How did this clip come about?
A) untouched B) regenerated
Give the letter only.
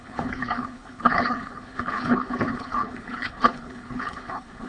B